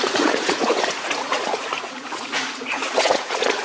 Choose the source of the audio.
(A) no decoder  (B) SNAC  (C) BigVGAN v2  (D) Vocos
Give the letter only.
D